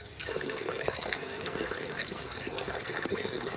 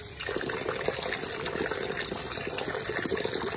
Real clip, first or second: second